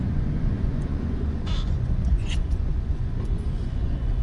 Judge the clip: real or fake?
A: fake